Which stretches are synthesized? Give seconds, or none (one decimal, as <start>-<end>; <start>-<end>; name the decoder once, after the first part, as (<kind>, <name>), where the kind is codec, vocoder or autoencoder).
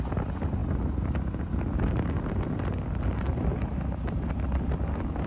none